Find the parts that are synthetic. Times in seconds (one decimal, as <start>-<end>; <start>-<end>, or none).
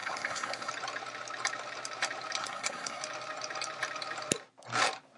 0.0-0.7; 2.4-3.0